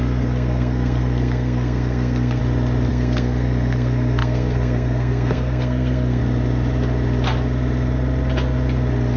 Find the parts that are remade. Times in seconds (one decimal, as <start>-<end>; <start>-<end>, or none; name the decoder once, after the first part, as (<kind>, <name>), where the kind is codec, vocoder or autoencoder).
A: 0.0-2.4 (codec, SNAC); 2.9-6.2